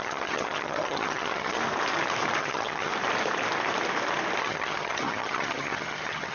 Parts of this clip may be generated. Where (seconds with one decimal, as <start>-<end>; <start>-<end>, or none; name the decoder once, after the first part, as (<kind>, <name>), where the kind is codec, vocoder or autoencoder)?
0.0-1.6 (vocoder, HiFi-GAN); 2.4-2.9; 4.4-6.3